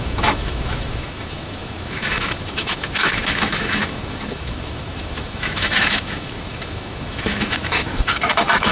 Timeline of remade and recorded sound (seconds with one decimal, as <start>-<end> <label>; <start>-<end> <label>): 0.0-8.7 remade